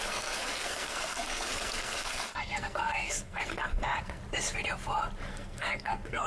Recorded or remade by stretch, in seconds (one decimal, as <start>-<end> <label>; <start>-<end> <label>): 0.0-4.2 remade; 4.2-5.3 recorded; 5.3-6.3 remade